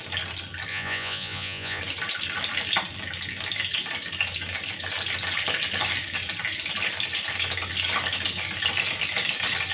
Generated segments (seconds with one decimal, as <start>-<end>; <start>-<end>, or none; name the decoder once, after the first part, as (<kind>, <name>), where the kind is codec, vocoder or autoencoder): 0.7-1.8 (vocoder, Vocos)